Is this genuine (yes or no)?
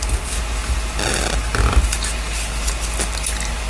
yes